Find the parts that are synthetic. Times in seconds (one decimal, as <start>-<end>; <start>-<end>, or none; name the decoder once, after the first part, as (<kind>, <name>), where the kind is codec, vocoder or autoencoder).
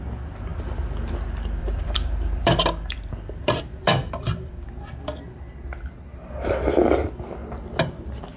1.6-5.4 (vocoder, BigVGAN v2)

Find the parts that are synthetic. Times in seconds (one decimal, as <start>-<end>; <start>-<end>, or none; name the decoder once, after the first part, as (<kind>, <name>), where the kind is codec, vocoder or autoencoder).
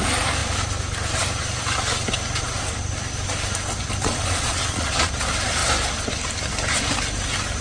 4.0-5.1 (vocoder, Vocos)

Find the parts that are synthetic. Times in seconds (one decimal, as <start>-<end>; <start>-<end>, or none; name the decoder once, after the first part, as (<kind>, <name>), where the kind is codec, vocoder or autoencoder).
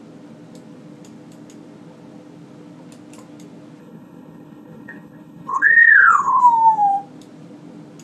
3.8-6.4 (codec, HILCodec)